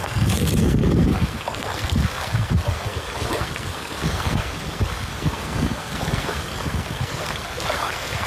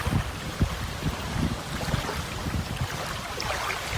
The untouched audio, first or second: second